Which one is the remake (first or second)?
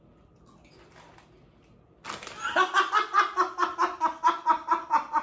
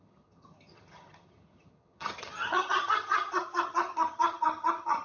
second